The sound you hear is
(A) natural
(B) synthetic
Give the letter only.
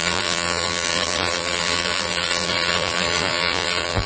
B